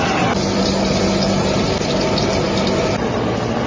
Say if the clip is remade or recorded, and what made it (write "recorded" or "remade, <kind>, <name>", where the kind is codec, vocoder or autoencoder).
recorded